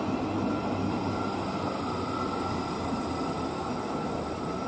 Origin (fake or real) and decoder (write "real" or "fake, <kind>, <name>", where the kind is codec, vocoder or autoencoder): real